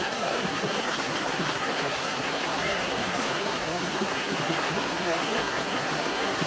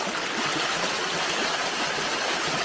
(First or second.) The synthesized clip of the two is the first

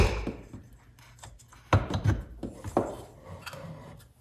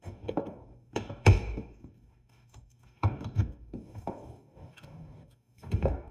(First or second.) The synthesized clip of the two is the second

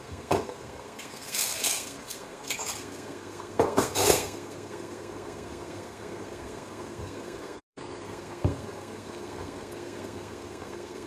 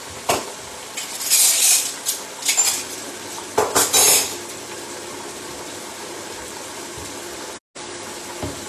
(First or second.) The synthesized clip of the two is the first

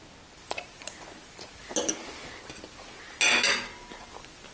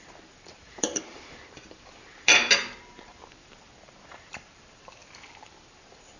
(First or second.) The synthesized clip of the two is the second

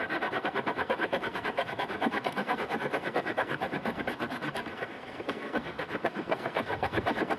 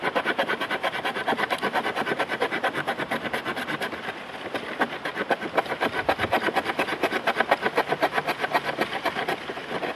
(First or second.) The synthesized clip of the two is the first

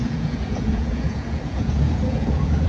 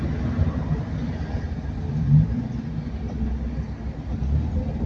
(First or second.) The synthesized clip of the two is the first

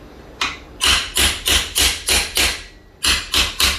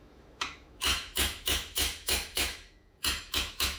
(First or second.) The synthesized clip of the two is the second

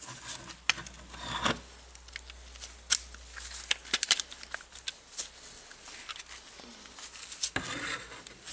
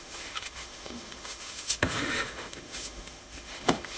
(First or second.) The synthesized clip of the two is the second